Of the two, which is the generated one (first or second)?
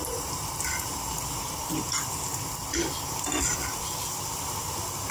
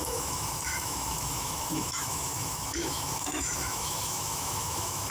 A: second